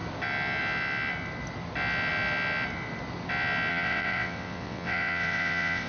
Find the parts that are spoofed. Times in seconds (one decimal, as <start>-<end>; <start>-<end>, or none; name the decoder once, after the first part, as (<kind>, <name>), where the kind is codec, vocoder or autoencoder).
3.7-5.9 (vocoder, WaveNeXt)